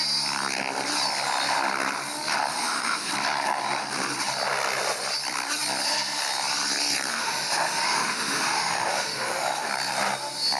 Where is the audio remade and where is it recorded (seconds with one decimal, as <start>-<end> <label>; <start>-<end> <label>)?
0.0-2.5 recorded; 2.5-3.1 remade; 3.1-7.1 recorded; 7.1-9.7 remade; 9.7-10.6 recorded